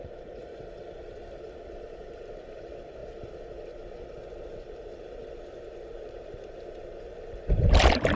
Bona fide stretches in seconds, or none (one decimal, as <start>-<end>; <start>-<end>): 0.5-1.4; 3.0-4.7; 5.2-5.9